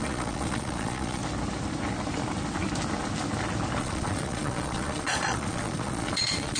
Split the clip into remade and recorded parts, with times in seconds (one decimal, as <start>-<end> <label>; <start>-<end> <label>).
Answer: 0.0-1.2 remade; 1.2-3.8 recorded; 3.8-6.6 remade